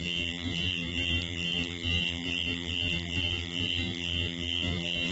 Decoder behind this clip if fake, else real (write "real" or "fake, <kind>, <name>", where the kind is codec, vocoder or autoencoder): fake, vocoder, BigVGAN v2